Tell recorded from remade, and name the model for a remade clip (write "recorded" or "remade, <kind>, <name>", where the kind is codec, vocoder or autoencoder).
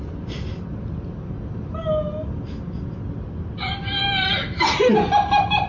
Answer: recorded